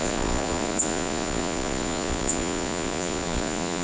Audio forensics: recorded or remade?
remade